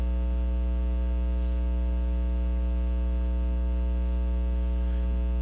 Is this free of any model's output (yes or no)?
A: yes